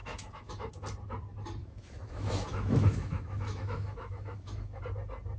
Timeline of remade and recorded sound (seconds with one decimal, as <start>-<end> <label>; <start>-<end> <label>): 0.0-0.7 remade; 0.7-1.6 recorded; 1.6-4.8 remade; 4.8-5.4 recorded